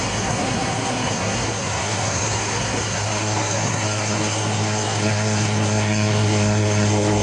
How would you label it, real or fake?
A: fake